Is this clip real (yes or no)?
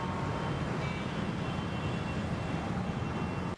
yes